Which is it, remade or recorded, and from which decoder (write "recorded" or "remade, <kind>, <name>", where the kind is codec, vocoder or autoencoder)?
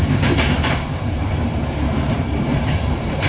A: remade, vocoder, BigVGAN v2